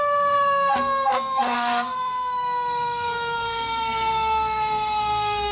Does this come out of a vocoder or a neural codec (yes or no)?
yes